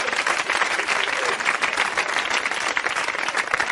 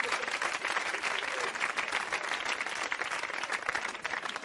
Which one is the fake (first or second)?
first